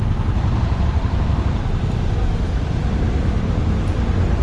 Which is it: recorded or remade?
remade